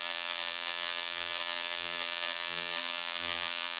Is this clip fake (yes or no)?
yes